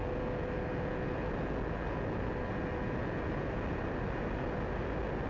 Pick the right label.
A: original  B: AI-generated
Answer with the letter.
A